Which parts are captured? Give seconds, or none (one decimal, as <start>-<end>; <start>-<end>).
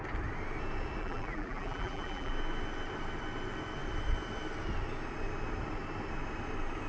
0.0-1.0; 2.3-6.9